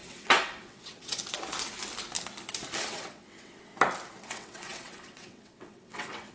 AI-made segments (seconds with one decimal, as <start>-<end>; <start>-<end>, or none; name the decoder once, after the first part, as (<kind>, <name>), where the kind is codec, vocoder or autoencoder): 0.0-1.2 (vocoder, WaveNeXt); 2.8-3.7; 4.2-6.3